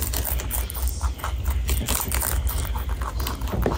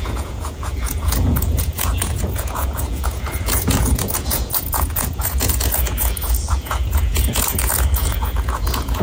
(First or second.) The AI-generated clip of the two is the second